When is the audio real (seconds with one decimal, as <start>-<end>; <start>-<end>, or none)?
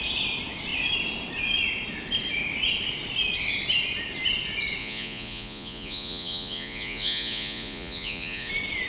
0.0-4.8; 8.5-8.9